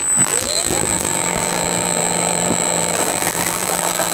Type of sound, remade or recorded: remade